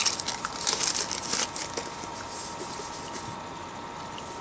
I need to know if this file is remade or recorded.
recorded